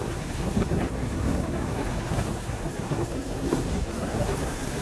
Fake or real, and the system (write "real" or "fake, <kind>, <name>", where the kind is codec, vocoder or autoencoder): fake, codec, SNAC